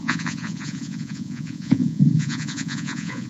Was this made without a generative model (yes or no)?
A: no